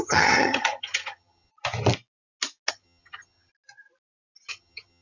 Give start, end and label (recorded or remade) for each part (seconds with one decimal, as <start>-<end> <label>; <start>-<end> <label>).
0.0-1.5 remade; 1.5-2.7 recorded; 2.7-3.5 remade; 3.5-4.5 recorded; 4.5-5.0 remade